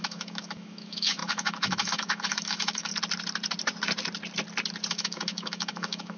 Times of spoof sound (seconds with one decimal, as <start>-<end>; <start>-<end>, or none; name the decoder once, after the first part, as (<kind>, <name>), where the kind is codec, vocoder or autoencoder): 0.0-2.9 (autoencoder, DAC-VAE); 4.9-6.2

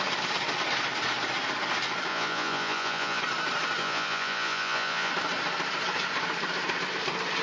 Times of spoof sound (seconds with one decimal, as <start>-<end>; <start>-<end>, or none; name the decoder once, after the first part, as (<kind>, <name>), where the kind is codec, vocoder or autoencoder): 2.1-3.2 (vocoder, Vocos); 3.8-5.1

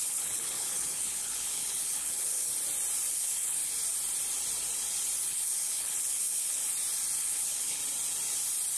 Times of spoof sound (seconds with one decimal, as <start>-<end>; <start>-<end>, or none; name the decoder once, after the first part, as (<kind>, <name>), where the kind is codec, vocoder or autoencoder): 0.0-2.5 (codec, HILCodec); 3.1-3.6; 5.3-6.6; 7.2-7.8

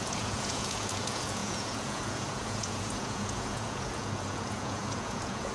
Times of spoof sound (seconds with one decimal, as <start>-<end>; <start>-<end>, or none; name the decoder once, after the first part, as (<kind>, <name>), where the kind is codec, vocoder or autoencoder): 0.0-5.5 (vocoder, Vocos)